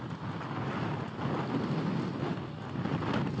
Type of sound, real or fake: real